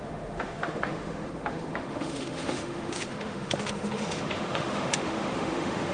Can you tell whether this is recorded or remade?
remade